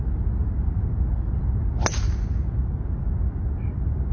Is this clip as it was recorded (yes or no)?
yes